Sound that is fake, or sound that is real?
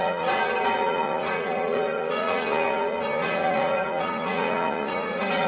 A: fake